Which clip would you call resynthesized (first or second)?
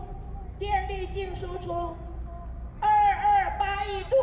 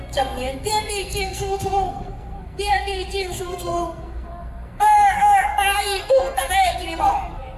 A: second